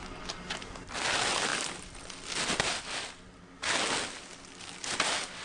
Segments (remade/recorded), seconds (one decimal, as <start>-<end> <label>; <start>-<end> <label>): 0.0-5.4 recorded